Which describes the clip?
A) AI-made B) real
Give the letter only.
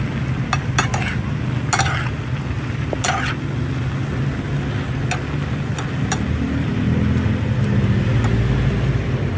B